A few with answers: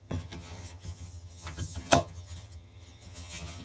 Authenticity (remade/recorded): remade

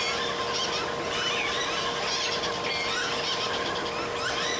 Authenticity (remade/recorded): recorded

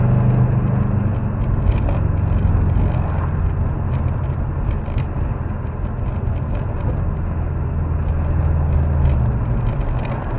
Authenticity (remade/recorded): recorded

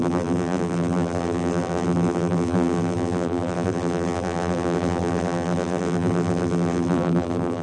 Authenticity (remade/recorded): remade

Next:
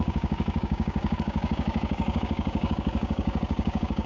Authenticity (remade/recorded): remade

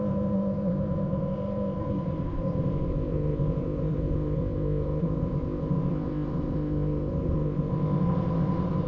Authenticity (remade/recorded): remade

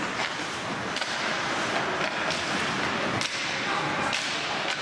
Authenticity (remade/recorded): recorded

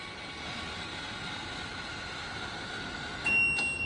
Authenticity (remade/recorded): recorded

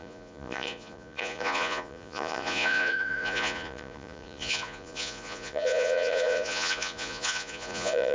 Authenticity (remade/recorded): remade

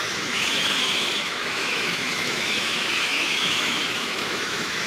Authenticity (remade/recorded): remade